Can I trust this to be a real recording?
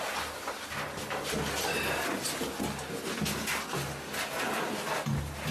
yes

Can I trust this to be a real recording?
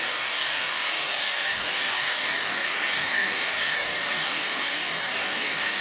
no